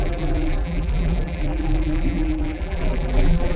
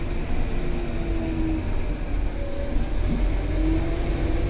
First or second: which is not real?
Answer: first